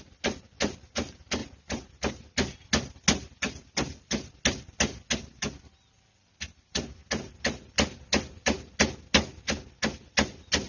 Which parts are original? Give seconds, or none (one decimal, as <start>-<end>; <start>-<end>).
0.0-10.7